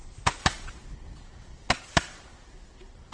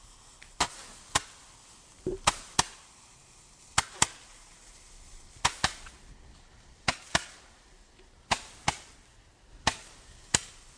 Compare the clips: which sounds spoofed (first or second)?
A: first